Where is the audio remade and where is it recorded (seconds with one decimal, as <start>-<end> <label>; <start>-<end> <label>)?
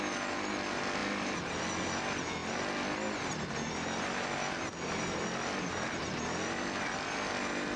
0.0-7.8 recorded